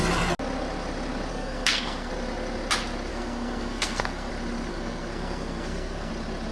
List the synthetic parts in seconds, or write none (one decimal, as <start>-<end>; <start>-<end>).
1.3-2.1; 3.1-4.3; 4.7-6.1